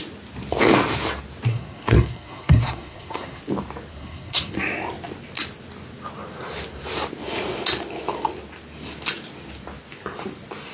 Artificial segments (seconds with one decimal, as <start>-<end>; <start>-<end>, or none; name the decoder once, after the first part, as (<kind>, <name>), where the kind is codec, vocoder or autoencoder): 1.5-3.4 (codec, SNAC); 3.9-4.5